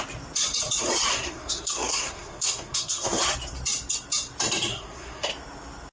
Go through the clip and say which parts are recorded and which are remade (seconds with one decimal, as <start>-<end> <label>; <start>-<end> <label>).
0.0-1.1 recorded; 1.1-3.2 remade; 3.2-4.7 recorded; 4.7-5.3 remade; 5.3-5.9 recorded